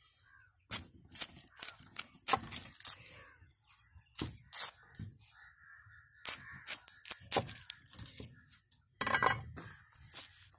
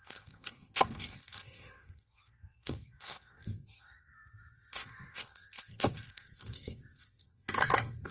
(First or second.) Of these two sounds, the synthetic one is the second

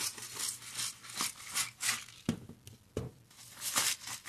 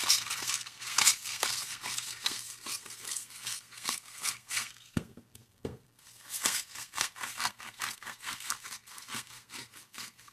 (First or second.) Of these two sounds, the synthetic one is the second